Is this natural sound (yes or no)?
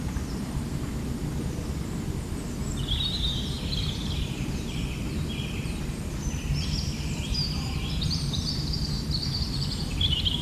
no